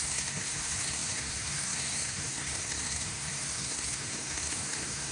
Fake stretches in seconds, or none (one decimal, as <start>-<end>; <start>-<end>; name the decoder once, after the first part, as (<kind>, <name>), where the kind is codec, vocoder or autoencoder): 0.0-5.1 (codec, SNAC)